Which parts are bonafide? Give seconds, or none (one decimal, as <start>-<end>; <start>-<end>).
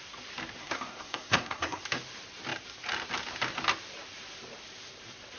0.0-0.6; 1.8-5.4